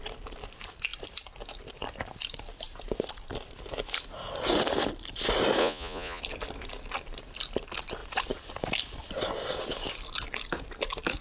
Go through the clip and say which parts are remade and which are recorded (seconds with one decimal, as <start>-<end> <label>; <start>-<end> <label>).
0.0-5.6 recorded; 5.6-6.2 remade; 6.2-11.2 recorded